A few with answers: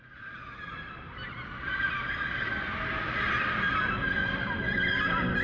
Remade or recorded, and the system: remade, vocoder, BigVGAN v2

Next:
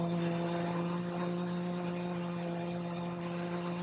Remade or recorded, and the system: recorded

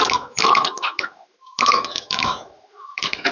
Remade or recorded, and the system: remade, autoencoder, DAC-VAE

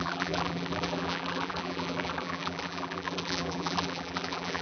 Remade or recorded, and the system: remade, vocoder, BigVGAN v2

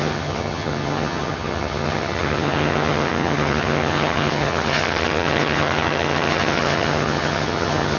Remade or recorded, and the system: remade, vocoder, HiFi-GAN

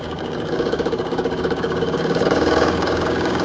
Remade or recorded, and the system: remade, codec, DAC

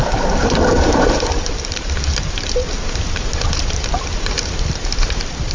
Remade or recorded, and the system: remade, vocoder, BigVGAN v2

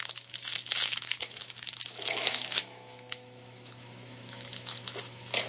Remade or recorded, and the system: remade, autoencoder, DAC-VAE